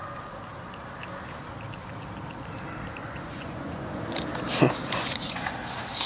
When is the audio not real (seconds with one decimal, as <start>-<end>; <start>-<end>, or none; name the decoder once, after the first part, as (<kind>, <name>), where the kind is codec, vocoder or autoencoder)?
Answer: 3.0-4.0 (vocoder, Vocos); 4.8-5.4